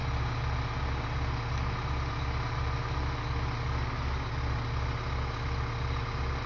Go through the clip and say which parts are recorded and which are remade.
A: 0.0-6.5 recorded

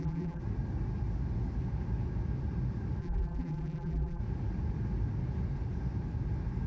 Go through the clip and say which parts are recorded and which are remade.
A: 0.0-0.4 remade; 0.4-3.0 recorded; 3.0-4.2 remade; 4.2-6.7 recorded

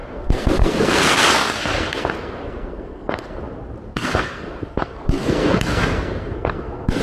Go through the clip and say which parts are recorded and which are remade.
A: 0.0-3.4 remade; 3.4-3.9 recorded; 3.9-7.0 remade